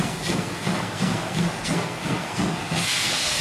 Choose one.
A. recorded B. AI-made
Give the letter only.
B